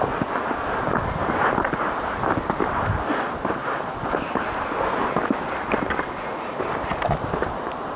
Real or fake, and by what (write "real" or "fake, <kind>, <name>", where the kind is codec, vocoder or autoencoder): real